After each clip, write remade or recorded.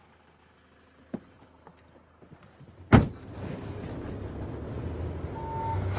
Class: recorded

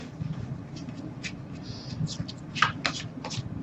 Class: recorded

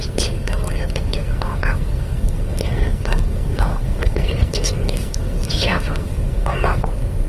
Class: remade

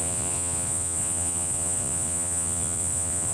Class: remade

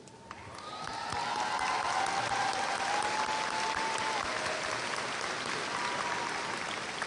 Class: recorded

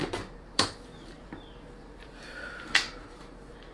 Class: remade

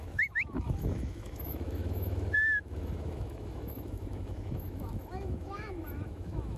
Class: remade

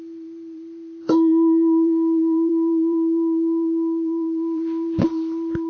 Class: remade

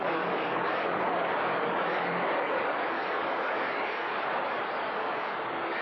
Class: remade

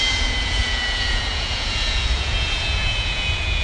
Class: remade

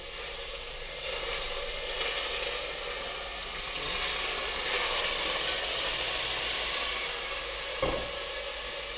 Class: recorded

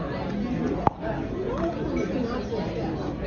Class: recorded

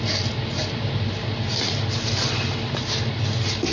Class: recorded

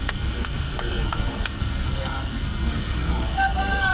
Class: remade